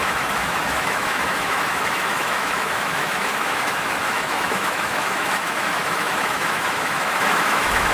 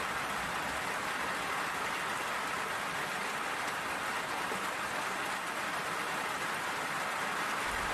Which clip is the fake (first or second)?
first